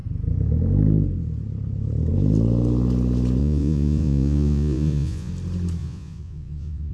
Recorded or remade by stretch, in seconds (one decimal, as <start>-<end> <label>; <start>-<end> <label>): 0.0-3.4 recorded; 3.4-5.3 remade; 5.3-5.8 recorded; 5.8-6.9 remade